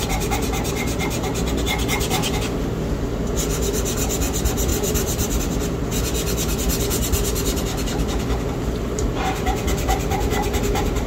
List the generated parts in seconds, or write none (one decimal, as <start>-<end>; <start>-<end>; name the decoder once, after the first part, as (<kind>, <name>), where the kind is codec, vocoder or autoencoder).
4.7-5.4 (vocoder, BigVGAN v2)